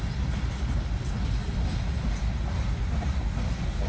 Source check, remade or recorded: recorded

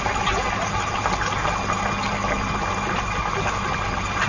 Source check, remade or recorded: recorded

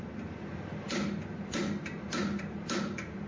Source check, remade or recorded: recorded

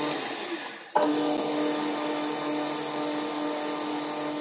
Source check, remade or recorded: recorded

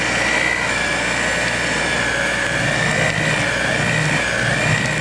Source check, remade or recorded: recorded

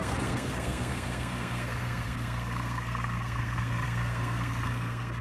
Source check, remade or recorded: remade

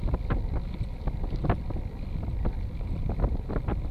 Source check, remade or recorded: recorded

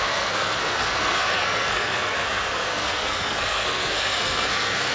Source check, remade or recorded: remade